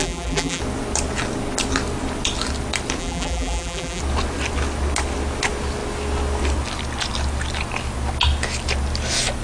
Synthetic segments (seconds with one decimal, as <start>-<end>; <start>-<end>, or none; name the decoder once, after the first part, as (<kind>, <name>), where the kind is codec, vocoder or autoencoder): 0.0-0.6 (vocoder, BigVGAN v2); 3.0-4.0